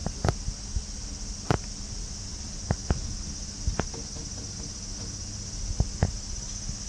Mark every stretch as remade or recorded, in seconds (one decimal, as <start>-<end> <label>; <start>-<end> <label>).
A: 0.0-6.9 recorded